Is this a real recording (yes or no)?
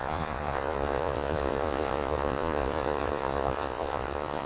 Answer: no